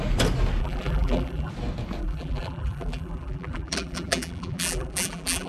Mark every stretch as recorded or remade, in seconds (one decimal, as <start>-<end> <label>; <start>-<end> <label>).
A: 0.0-0.6 recorded; 0.6-1.5 remade; 1.5-2.0 recorded; 2.0-5.5 remade

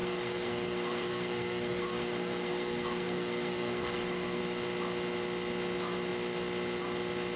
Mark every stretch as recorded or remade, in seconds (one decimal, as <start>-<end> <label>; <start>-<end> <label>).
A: 0.0-4.4 remade; 4.4-7.4 recorded